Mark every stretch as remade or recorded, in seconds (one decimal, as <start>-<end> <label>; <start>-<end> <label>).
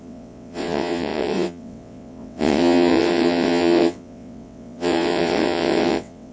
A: 0.0-6.3 remade